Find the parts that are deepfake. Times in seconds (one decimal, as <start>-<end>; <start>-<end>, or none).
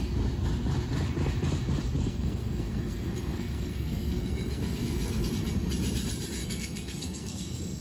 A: 2.0-5.3; 6.4-7.8